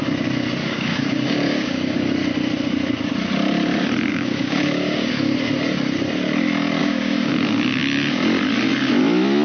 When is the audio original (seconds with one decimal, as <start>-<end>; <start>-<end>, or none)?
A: 0.0-0.6; 2.1-4.1; 5.1-6.8; 7.3-9.4